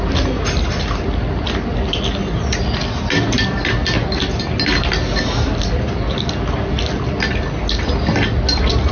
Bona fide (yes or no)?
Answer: yes